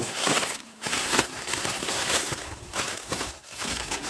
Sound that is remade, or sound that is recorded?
remade